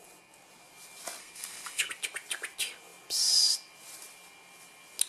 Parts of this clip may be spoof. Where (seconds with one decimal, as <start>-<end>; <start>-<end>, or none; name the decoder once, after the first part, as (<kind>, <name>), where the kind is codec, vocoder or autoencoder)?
1.2-1.9 (codec, SNAC)